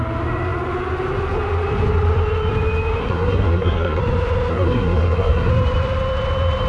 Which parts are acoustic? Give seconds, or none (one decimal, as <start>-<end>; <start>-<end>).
0.0-3.0; 4.0-4.5; 5.5-6.7

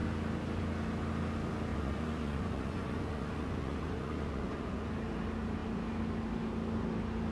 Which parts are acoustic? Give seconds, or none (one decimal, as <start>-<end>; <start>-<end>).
0.0-1.7; 4.9-7.3

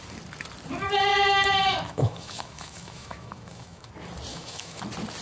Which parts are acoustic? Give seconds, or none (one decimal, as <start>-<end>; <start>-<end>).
0.0-1.1; 3.9-4.3; 4.8-5.2

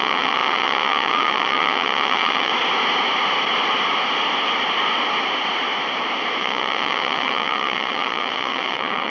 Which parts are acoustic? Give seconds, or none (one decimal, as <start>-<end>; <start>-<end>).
2.5-6.4

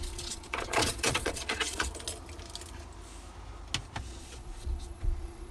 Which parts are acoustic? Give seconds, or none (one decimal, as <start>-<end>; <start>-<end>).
1.9-4.0

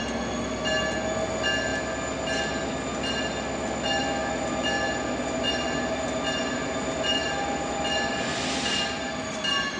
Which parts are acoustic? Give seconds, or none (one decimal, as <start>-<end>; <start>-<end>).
0.0-9.8

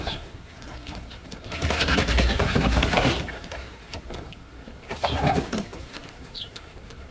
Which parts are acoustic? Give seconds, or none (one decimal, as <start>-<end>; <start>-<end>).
none

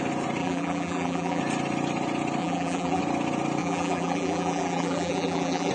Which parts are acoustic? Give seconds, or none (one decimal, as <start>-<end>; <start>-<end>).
0.0-0.4; 1.4-2.4; 3.0-3.6